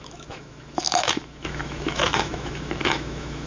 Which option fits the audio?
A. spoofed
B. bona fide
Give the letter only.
A